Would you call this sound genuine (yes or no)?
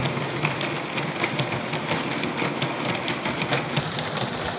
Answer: yes